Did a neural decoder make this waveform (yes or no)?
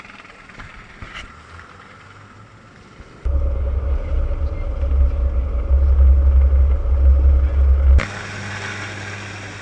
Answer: no